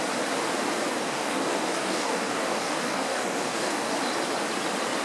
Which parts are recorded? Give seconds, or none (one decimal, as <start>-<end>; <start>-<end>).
0.0-0.9; 3.9-5.0